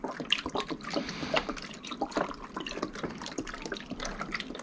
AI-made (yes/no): yes